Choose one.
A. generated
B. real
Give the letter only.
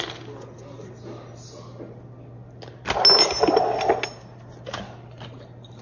B